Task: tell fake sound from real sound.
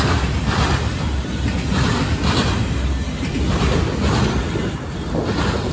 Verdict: real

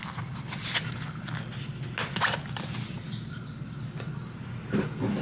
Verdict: real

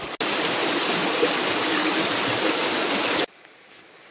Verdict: real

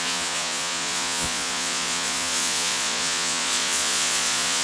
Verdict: fake